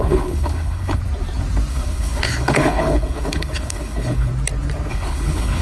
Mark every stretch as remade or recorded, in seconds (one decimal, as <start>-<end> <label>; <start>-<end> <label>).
0.0-1.0 remade; 1.0-1.7 recorded; 1.7-4.3 remade; 4.3-4.9 recorded; 4.9-5.6 remade